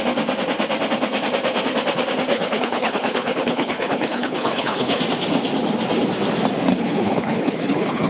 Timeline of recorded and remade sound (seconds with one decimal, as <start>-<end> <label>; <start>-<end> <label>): 0.0-2.3 recorded; 2.3-5.0 remade; 5.0-6.7 recorded; 6.7-8.1 remade